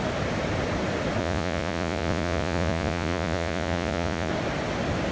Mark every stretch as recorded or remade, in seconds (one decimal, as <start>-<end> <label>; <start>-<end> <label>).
0.0-1.2 recorded; 1.2-4.3 remade; 4.3-5.1 recorded